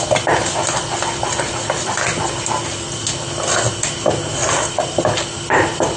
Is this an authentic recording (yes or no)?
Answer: yes